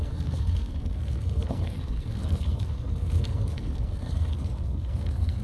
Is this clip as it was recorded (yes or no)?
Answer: no